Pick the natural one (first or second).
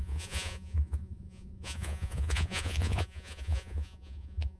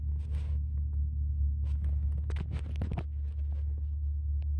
second